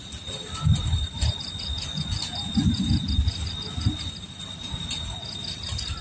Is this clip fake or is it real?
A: real